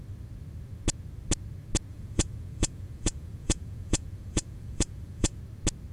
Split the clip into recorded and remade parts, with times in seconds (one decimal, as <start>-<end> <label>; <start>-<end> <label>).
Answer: 0.0-1.9 recorded; 1.9-5.4 remade; 5.4-5.9 recorded

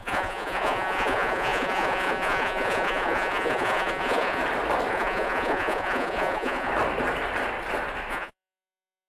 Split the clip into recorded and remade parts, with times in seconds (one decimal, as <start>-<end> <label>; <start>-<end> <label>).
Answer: 0.0-4.4 remade; 4.4-4.9 recorded; 4.9-6.7 remade; 6.7-8.1 recorded; 8.1-9.1 remade